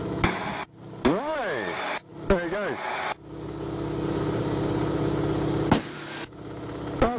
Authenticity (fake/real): real